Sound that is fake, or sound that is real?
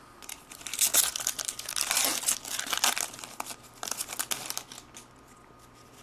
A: real